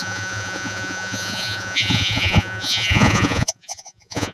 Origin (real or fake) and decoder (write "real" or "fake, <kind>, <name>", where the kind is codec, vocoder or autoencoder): fake, vocoder, Vocos